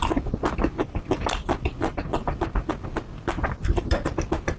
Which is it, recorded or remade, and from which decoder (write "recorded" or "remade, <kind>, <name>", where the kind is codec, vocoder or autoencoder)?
recorded